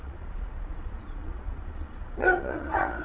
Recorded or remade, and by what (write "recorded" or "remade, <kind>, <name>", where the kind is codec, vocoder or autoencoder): remade, vocoder, Vocos